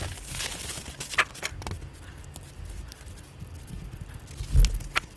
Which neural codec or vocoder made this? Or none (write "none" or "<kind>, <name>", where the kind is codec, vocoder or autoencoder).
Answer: none